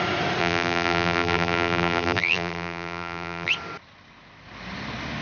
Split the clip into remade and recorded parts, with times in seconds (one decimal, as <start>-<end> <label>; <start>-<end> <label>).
0.0-0.4 recorded; 0.4-3.5 remade; 3.5-5.2 recorded